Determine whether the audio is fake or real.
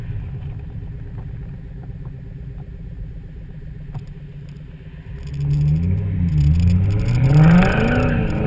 real